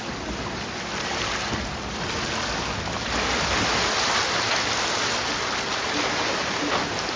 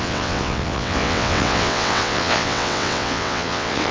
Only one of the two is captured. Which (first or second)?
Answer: first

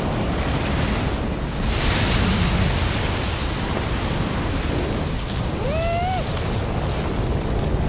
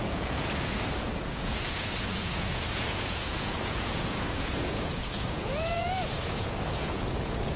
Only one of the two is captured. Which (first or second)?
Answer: first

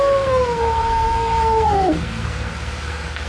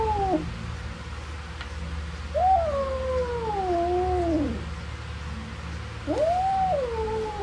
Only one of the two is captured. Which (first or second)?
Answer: second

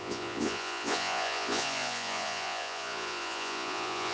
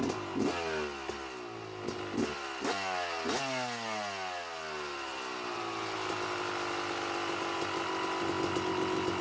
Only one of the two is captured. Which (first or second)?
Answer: second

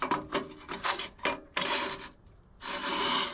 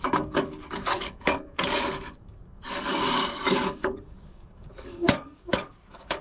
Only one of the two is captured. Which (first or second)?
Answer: first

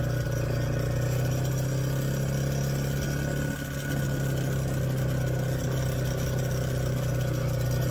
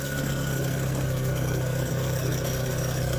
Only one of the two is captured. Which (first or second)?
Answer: first